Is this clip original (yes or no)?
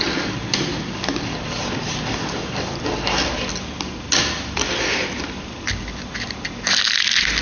yes